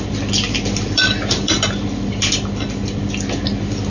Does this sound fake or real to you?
real